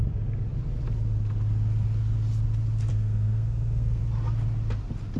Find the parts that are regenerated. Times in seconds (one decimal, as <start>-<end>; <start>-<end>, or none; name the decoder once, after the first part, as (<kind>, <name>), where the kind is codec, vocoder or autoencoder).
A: 2.9-4.0 (codec, SNAC)